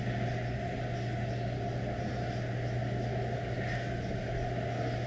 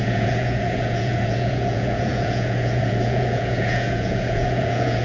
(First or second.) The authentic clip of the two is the first